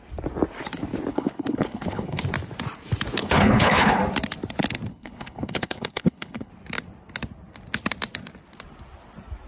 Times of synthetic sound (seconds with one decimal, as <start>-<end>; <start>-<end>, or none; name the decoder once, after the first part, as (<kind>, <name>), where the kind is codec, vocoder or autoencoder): 1.1-2.2 (codec, HILCodec); 3.2-4.0; 4.9-6.5